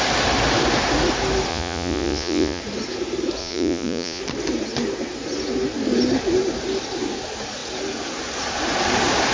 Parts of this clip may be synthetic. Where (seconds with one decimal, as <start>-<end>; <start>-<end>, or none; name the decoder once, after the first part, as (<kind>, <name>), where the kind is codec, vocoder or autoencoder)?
1.5-2.6 (vocoder, Vocos); 3.4-4.2